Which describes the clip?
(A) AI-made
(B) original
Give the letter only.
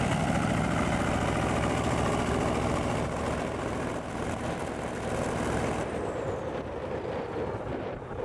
A